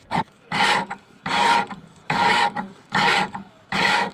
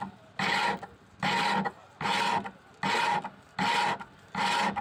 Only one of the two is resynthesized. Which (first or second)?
first